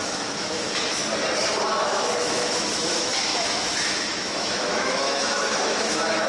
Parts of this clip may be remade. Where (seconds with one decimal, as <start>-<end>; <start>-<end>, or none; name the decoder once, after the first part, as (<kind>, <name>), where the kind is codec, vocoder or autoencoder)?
0.0-1.0 (autoencoder, DAC-VAE); 1.8-6.3